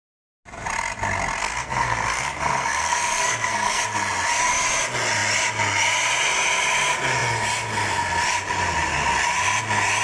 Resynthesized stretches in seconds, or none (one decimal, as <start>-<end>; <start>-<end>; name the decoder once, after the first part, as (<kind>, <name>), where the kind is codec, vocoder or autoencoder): 1.4-3.8 (codec, SNAC)